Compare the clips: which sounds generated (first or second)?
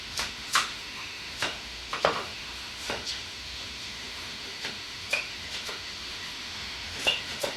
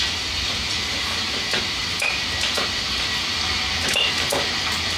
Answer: first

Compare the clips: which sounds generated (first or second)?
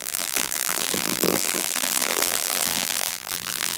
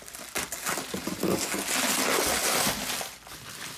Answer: first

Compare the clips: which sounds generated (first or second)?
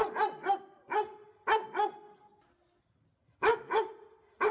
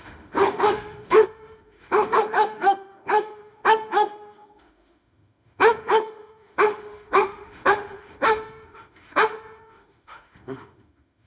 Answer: second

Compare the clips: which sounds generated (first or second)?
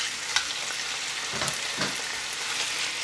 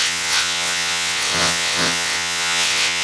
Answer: second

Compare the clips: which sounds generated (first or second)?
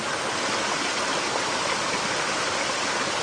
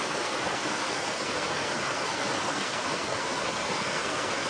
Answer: second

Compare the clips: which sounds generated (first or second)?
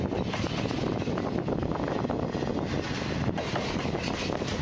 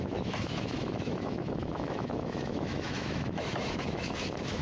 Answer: second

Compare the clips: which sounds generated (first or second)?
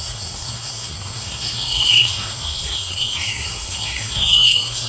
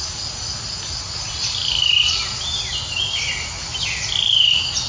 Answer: first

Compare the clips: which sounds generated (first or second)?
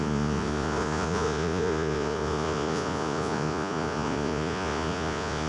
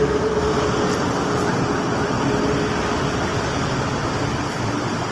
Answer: first